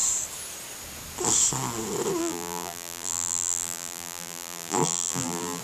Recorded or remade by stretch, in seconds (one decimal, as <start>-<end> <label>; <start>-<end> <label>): 0.0-2.2 recorded; 2.2-5.6 remade